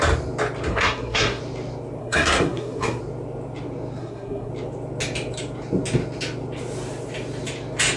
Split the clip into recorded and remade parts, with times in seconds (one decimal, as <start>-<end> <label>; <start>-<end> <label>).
0.0-0.7 recorded; 0.7-1.4 remade; 1.4-2.0 recorded; 2.0-3.0 remade; 3.0-4.0 recorded; 4.0-4.5 remade; 4.5-8.0 recorded